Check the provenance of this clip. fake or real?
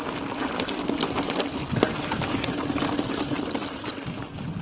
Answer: real